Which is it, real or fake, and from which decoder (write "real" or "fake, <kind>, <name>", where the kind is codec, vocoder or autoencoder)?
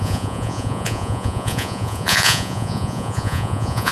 fake, vocoder, Vocos